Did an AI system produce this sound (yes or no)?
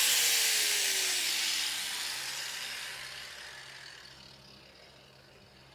no